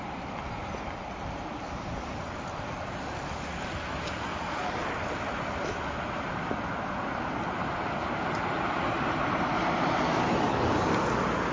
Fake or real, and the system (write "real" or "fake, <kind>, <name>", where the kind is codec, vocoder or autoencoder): real